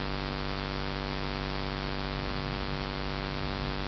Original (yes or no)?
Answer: no